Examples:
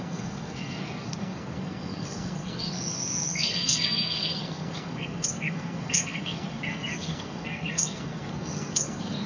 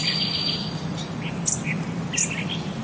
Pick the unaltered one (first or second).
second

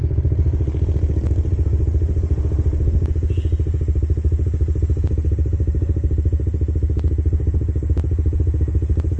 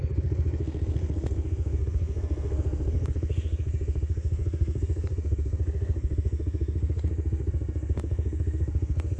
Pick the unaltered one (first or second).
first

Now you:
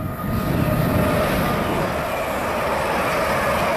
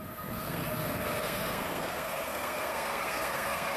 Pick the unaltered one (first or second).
first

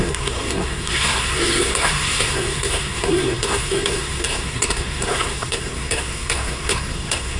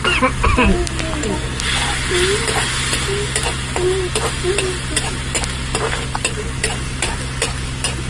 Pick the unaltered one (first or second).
second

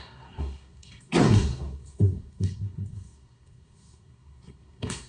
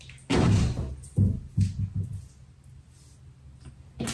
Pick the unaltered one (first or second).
second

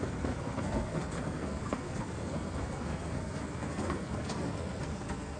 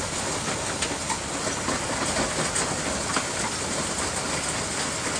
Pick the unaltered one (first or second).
second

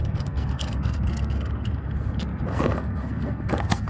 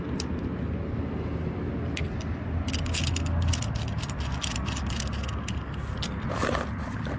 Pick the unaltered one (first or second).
second